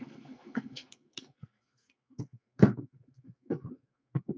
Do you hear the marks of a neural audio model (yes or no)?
yes